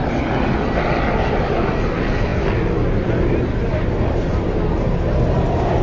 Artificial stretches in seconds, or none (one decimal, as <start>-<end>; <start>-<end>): none